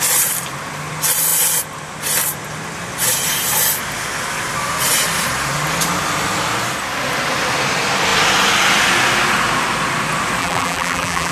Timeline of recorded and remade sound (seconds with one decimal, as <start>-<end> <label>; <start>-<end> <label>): 0.0-10.4 recorded; 10.4-11.3 remade